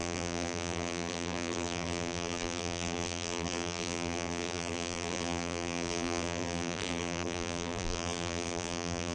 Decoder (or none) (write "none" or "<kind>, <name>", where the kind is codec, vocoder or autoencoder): vocoder, BigVGAN v2